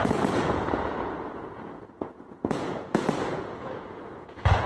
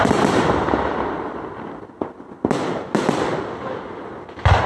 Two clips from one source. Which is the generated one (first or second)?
first